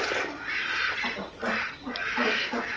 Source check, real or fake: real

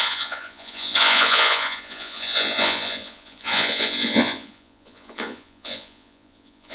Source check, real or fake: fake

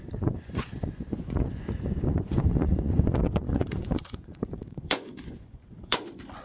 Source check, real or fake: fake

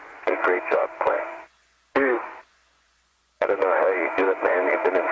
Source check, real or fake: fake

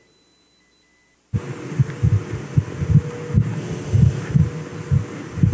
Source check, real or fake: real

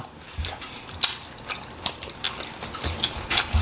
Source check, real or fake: real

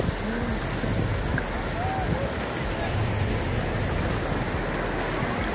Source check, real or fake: real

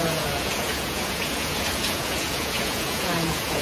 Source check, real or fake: fake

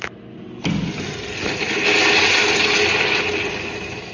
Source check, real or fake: real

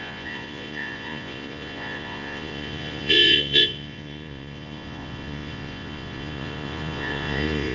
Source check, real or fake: fake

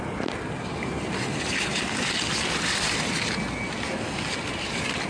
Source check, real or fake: real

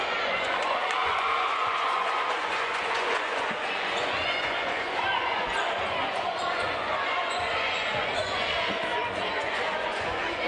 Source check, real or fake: fake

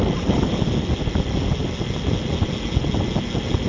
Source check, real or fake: real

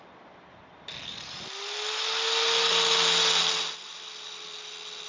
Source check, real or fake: real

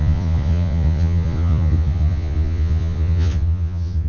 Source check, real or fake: fake